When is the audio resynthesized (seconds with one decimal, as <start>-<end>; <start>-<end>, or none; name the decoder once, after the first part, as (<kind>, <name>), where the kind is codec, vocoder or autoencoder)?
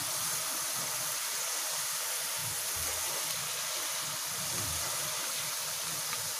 0.8-2.4 (vocoder, BigVGAN v2); 4.3-6.4